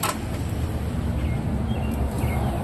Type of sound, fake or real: real